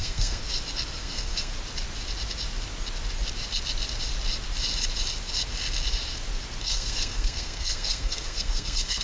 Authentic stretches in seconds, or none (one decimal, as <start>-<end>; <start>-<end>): 0.4-1.0; 1.5-6.6